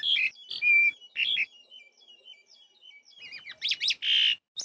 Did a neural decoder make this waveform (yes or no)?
no